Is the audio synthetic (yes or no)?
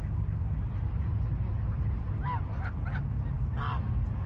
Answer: no